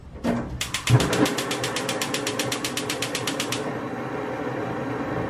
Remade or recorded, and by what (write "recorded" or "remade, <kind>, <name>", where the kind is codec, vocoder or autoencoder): recorded